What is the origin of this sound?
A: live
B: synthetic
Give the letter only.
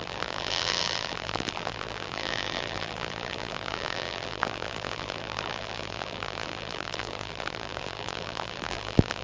B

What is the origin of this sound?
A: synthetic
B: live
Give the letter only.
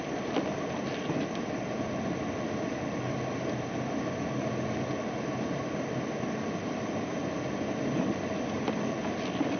B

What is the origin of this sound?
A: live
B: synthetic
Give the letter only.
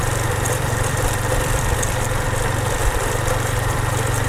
B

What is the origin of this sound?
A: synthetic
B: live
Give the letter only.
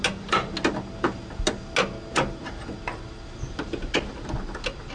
B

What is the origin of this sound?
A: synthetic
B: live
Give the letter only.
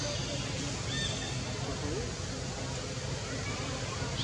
B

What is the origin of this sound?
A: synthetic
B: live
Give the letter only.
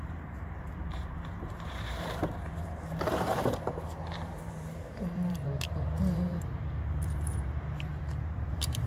A